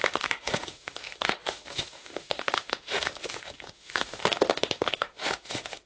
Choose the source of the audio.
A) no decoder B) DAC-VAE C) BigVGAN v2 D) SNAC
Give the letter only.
B